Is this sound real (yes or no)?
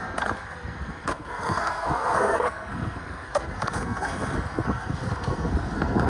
no